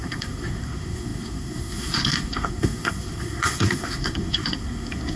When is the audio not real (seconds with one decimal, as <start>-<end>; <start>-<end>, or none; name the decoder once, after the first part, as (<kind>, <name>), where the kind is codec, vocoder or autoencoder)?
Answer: 0.0-5.2 (codec, SNAC)